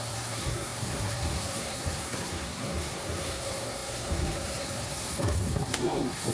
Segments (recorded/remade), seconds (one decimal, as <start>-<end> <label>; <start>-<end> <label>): 0.0-6.3 remade